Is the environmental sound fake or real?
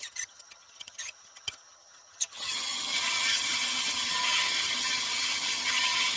fake